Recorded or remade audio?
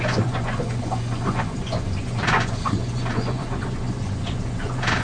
remade